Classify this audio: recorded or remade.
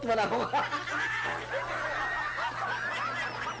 recorded